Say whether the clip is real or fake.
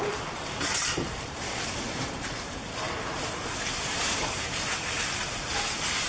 fake